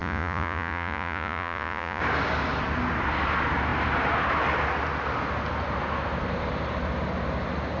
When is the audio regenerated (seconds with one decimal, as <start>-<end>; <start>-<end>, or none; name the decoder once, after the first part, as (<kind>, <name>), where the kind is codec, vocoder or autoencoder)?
0.0-2.0 (vocoder, Vocos)